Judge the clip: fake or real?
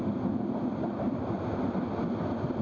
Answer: real